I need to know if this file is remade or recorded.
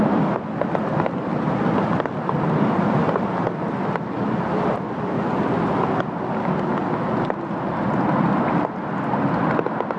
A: recorded